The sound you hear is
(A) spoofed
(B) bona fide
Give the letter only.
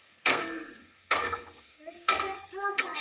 A